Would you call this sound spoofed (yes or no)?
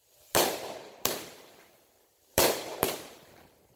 yes